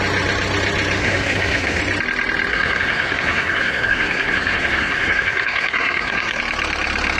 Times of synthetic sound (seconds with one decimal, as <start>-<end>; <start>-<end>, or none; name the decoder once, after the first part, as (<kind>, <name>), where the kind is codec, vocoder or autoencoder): 1.0-1.8 (codec, SNAC); 2.5-6.4